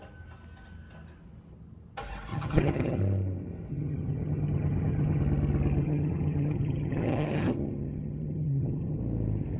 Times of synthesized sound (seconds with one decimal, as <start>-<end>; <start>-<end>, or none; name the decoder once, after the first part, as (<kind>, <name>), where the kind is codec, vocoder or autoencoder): 2.3-3.0 (vocoder, HiFi-GAN); 3.7-5.2; 5.8-9.0